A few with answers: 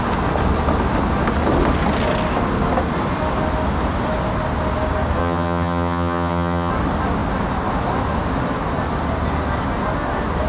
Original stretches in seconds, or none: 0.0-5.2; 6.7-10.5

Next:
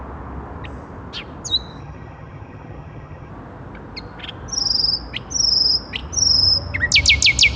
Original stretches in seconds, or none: 0.0-1.8; 3.3-7.6

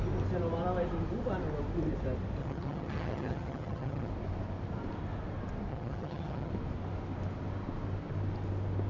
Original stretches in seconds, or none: 0.0-2.4; 4.1-5.7; 6.5-8.9

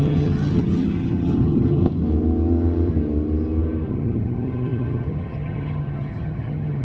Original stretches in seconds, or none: 1.8-3.9

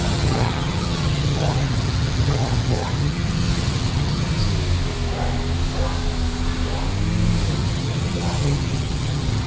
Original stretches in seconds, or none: 4.4-7.5